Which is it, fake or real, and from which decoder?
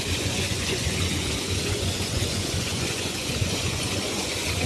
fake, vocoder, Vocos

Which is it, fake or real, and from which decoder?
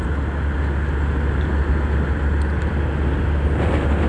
real